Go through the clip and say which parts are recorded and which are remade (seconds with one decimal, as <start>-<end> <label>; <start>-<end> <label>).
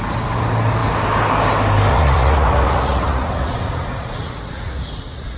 0.0-1.9 recorded; 1.9-5.4 remade